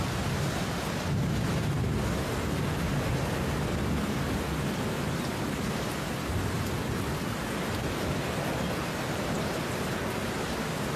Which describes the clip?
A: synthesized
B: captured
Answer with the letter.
B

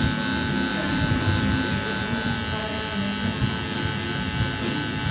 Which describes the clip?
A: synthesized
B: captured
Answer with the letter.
B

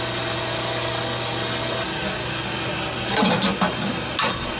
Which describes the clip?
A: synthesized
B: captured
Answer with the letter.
B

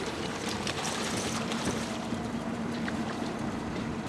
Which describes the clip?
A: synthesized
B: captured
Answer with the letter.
A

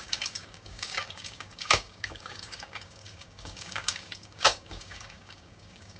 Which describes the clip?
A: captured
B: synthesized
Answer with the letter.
B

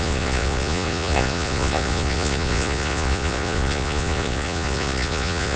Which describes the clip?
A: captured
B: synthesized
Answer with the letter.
B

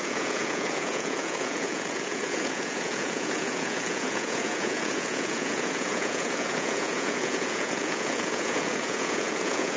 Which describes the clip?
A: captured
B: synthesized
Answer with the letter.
B